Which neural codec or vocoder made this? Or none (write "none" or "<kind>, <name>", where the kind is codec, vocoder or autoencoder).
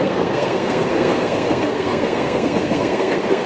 codec, SNAC